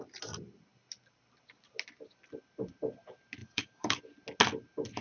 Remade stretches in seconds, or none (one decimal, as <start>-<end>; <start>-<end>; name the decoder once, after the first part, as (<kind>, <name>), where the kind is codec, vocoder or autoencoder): 3.4-4.0 (codec, DAC)